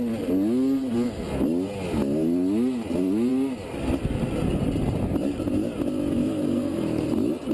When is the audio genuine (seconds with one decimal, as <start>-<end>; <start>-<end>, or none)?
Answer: 0.0-6.2; 7.1-7.5